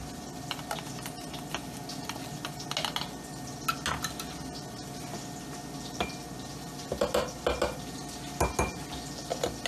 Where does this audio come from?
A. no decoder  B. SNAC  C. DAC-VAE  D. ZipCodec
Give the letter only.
A